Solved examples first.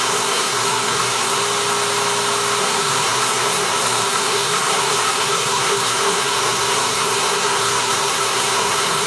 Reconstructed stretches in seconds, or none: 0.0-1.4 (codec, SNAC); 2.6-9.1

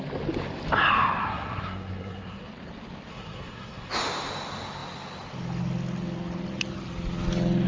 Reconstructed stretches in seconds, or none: 1.2-2.5 (codec, SNAC); 3.1-3.9

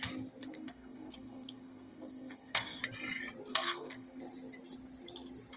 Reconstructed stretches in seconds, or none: 0.4-2.8 (codec, SNAC); 3.5-4.2

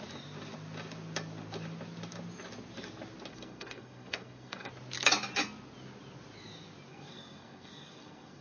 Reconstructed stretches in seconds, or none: 3.3-4.7 (codec, SNAC); 6.9-8.4

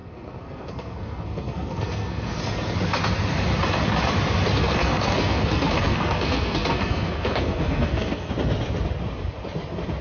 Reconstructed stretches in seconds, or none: 0.0-2.4 (codec, SNAC); 4.6-8.3

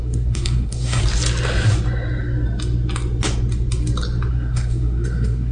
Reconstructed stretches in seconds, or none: 0.0-1.0 (codec, SNAC); 4.3-5.5

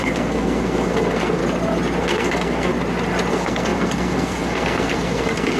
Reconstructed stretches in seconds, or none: 0.0-1.4 (codec, SNAC); 2.0-2.7; 3.3-5.6